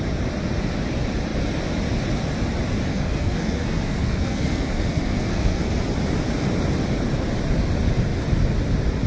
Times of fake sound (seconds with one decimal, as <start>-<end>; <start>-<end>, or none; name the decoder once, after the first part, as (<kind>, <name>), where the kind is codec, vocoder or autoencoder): 2.9-5.6 (codec, SNAC)